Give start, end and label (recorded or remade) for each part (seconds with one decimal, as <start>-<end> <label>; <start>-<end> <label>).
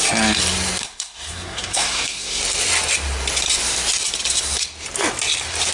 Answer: 0.0-0.8 recorded; 0.8-2.4 remade; 2.4-5.7 recorded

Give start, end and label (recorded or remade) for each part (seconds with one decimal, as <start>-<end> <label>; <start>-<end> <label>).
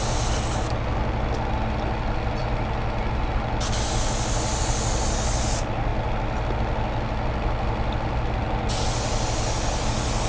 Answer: 0.0-10.3 recorded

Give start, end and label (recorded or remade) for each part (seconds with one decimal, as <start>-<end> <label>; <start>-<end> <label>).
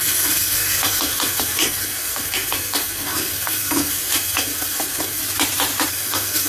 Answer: 0.0-5.2 remade; 5.2-5.9 recorded; 5.9-6.5 remade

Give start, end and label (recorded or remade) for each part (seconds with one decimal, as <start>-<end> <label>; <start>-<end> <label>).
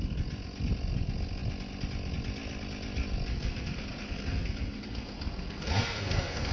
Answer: 0.0-3.3 recorded; 3.3-6.5 remade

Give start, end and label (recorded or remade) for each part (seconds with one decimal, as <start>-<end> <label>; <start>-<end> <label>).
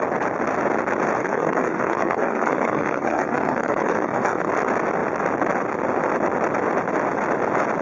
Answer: 0.0-1.2 recorded; 1.2-4.5 remade; 4.5-7.8 recorded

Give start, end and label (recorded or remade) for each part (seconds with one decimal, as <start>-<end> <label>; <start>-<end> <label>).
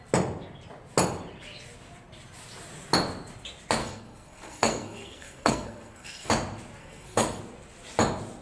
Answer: 0.0-3.8 recorded; 3.8-6.3 remade; 6.3-6.8 recorded; 6.8-7.4 remade; 7.4-8.4 recorded